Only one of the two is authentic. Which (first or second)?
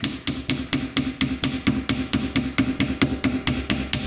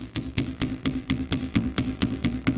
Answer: first